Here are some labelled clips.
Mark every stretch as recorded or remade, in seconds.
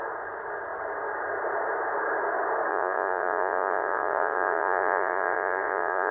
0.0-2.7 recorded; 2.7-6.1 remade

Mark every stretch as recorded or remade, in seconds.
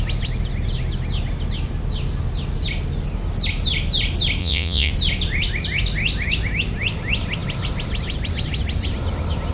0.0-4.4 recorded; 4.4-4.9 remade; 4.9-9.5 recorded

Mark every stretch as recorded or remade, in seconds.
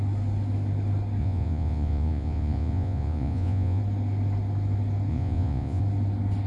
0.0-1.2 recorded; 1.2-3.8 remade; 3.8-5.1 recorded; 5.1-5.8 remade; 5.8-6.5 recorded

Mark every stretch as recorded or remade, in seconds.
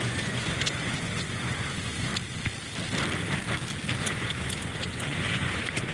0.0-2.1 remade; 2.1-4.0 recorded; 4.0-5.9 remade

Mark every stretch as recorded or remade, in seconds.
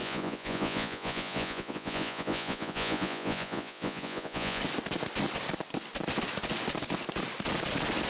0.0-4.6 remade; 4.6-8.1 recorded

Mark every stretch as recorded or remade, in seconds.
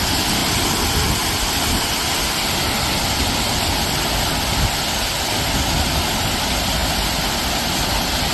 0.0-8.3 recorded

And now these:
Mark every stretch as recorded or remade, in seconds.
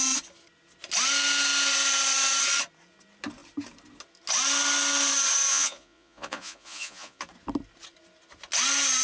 0.0-5.5 recorded; 5.5-7.2 remade; 7.2-9.0 recorded